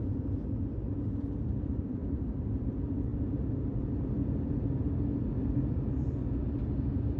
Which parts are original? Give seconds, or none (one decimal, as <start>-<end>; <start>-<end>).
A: 0.0-2.0; 2.6-7.2